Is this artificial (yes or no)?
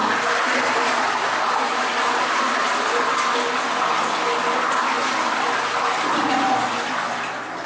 no